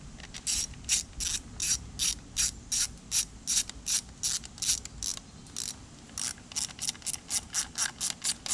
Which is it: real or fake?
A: real